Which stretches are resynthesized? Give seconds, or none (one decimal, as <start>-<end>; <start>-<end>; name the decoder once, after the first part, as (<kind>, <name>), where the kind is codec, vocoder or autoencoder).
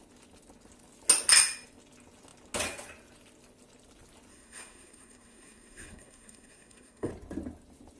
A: 4.3-7.1 (codec, SNAC)